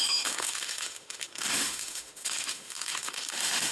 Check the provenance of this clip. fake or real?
fake